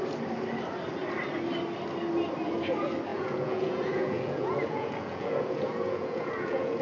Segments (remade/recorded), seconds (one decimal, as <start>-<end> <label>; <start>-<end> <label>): 0.0-3.1 recorded; 3.1-6.8 remade